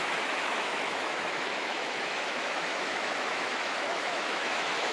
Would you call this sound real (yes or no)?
no